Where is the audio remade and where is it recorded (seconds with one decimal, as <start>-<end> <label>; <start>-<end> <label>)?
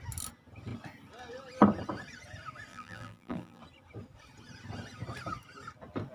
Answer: 0.0-2.7 recorded; 2.7-3.6 remade; 3.6-6.1 recorded